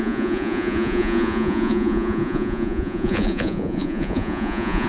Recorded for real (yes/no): no